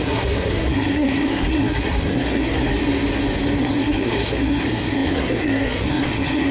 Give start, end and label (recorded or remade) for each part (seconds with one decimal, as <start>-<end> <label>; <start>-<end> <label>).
0.0-2.7 remade; 2.7-3.6 recorded; 3.6-6.5 remade